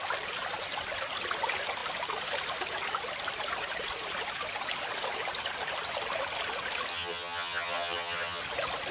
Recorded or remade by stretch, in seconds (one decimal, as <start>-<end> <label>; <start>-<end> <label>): 0.0-6.9 recorded; 6.9-8.4 remade; 8.4-8.9 recorded